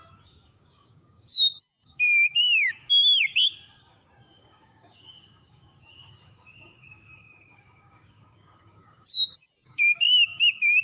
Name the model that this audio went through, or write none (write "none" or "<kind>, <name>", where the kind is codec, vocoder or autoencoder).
codec, DAC